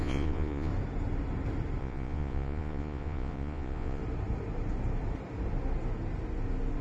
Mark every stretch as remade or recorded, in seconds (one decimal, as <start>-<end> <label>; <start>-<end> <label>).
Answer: 0.0-0.7 remade; 0.7-1.8 recorded; 1.8-4.0 remade; 4.0-6.8 recorded